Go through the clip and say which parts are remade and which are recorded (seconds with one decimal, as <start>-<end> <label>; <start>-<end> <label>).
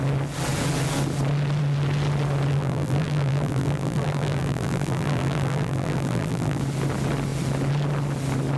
0.0-2.5 recorded; 2.5-6.6 remade; 6.6-8.6 recorded